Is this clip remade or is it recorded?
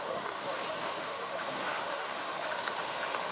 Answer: remade